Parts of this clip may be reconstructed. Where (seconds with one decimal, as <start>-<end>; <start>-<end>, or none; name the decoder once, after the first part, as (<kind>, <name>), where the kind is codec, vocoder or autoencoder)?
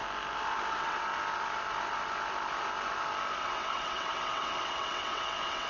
0.7-1.1 (vocoder, WaveNeXt); 3.4-5.7